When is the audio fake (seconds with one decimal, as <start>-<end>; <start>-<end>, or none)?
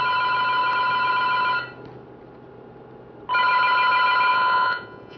4.3-5.2